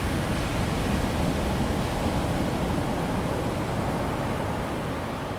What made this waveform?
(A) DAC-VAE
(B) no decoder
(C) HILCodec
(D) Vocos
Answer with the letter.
B